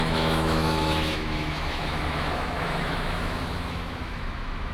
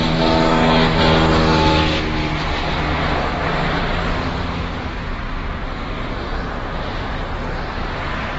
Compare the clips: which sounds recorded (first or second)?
second